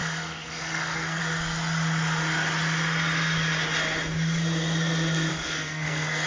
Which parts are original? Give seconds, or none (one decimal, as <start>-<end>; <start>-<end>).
1.2-5.3